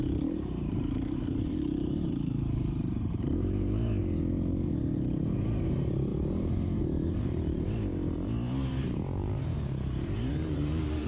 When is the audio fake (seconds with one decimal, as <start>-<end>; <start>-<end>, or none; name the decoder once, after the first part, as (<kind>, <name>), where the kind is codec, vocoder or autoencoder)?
0.0-4.0 (vocoder, BigVGAN v2); 5.1-11.1

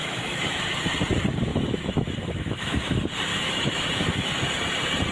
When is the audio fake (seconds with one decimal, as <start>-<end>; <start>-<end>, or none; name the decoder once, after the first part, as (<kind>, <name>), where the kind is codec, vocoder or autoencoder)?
0.0-0.6 (autoencoder, DAC-VAE); 1.5-2.8; 3.3-4.4

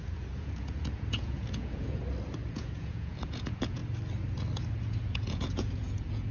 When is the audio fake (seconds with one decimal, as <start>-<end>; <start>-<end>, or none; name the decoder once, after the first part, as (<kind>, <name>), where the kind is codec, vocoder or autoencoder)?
0.0-2.0 (vocoder, Vocos); 2.5-3.8; 4.8-6.3